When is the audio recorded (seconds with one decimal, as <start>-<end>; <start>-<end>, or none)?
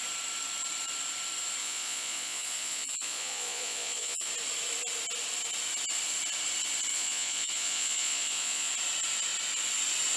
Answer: 0.0-1.6; 4.3-6.9; 8.7-10.2